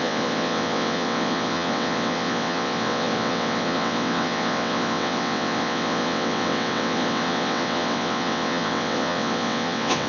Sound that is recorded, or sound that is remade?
remade